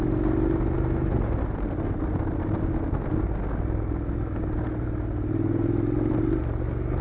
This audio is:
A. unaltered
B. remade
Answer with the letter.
A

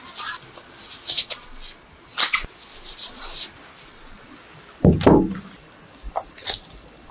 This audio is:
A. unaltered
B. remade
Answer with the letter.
A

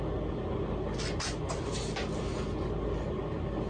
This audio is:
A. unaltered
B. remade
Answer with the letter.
A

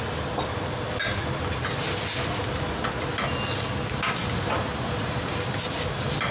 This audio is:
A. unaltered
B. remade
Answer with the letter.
A